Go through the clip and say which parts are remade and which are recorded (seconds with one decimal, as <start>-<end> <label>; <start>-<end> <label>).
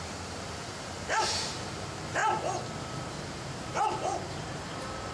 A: 0.0-2.2 remade; 2.2-2.8 recorded; 2.8-5.1 remade